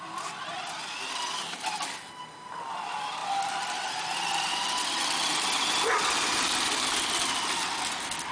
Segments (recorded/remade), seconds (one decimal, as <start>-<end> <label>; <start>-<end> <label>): 0.0-8.3 recorded